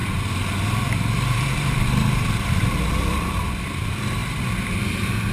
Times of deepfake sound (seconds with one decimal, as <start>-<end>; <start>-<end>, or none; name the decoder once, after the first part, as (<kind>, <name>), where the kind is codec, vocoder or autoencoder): 0.0-5.3 (vocoder, BigVGAN v2)